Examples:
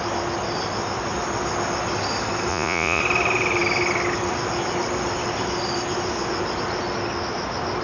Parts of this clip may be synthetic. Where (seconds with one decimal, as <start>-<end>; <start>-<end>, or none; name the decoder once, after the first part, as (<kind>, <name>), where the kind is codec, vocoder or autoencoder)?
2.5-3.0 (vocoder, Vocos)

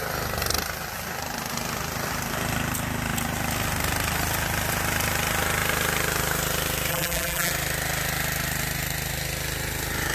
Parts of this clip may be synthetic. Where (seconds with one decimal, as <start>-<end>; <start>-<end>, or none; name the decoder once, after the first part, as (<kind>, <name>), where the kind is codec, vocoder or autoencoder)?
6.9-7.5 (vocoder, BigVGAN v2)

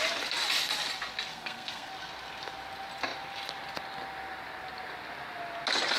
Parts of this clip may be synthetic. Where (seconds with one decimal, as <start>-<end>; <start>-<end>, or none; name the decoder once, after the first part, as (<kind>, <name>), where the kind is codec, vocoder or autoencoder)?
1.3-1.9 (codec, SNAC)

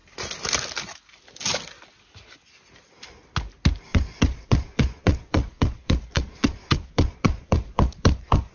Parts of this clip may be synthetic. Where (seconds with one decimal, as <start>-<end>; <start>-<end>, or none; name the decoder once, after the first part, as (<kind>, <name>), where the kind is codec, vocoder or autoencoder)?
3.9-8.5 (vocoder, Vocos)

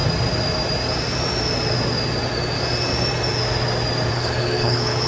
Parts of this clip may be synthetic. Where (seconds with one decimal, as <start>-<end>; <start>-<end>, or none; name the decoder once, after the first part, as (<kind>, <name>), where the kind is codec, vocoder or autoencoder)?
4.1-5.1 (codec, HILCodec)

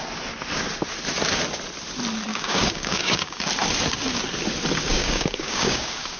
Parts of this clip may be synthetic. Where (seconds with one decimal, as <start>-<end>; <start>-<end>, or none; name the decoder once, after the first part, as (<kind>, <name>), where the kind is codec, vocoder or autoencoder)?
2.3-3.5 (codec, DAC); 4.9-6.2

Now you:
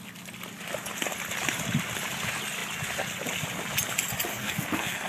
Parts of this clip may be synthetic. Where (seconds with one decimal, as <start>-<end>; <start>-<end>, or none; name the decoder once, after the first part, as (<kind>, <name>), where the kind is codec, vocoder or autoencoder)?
4.3-5.1 (codec, SNAC)